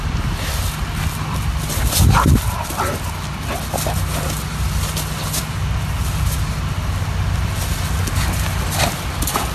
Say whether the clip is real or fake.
real